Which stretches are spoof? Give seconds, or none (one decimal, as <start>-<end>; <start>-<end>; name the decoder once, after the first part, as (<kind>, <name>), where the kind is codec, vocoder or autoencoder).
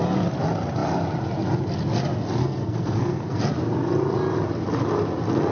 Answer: 2.4-3.4 (codec, SNAC)